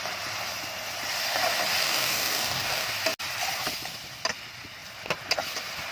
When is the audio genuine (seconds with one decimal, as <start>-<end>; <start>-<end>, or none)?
0.0-1.8; 2.9-5.9

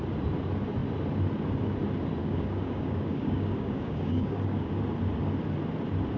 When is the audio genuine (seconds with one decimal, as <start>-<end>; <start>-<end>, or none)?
0.0-2.2; 4.7-6.2

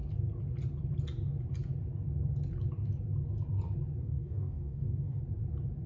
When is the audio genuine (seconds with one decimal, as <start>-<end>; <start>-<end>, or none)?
0.0-4.0; 5.2-5.9

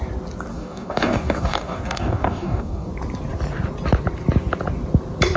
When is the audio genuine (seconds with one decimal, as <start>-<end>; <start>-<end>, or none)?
0.0-0.5; 2.9-5.4

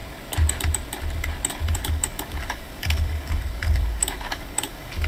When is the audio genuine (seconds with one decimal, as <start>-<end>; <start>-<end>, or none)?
0.0-1.7

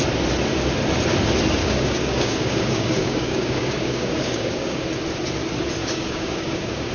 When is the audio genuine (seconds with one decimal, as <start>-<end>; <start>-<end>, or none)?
0.0-1.6; 4.8-5.8

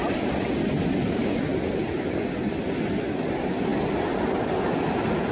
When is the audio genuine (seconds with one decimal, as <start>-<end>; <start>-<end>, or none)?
0.0-5.3